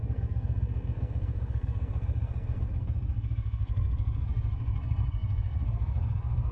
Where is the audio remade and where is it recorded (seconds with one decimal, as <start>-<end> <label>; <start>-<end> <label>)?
0.0-6.5 remade